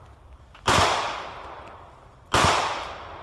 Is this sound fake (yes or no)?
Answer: yes